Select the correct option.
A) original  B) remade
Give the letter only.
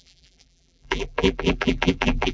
B